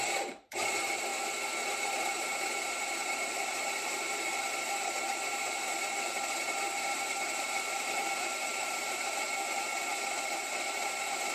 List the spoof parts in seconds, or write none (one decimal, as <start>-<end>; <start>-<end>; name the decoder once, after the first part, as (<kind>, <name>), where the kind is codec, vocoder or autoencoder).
0.0-1.1 (vocoder, BigVGAN v2); 1.7-11.3